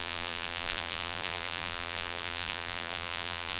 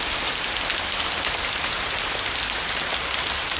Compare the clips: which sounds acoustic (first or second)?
second